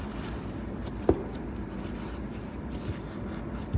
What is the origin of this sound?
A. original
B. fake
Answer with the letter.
A